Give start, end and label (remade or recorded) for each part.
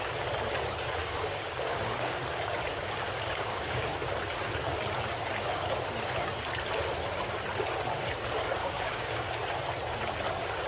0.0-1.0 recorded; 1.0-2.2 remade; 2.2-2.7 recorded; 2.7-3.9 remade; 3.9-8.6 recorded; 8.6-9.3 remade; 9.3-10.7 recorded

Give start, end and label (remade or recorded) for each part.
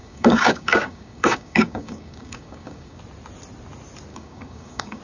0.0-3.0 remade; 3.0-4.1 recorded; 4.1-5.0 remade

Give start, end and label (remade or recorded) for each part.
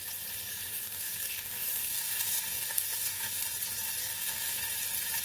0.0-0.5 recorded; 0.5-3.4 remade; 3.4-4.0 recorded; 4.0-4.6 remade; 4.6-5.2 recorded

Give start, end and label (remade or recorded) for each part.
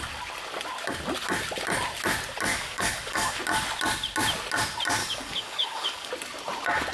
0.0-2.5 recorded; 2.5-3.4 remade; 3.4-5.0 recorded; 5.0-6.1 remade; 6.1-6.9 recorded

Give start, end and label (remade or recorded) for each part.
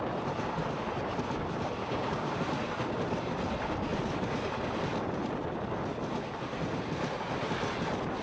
0.0-1.8 recorded; 1.8-2.4 remade; 2.4-8.2 recorded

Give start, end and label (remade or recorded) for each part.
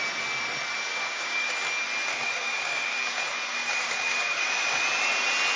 0.0-0.9 recorded; 0.9-1.5 remade; 1.5-2.1 recorded; 2.1-3.2 remade; 3.2-3.6 recorded; 3.6-4.5 remade; 4.5-5.6 recorded